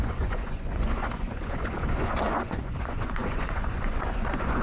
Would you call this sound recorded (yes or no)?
no